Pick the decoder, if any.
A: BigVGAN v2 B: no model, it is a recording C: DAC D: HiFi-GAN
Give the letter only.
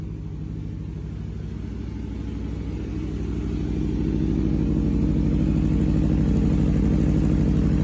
B